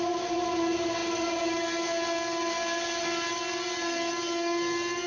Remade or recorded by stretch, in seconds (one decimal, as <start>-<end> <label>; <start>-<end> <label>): 0.0-5.1 recorded